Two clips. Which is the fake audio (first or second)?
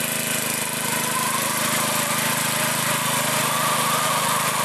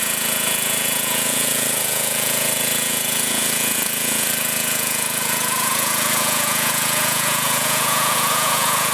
second